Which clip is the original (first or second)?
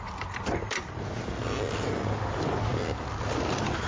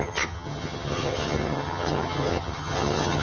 first